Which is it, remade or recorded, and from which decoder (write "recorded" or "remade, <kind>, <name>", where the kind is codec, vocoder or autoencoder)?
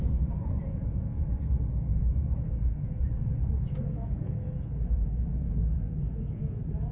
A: remade, vocoder, Vocos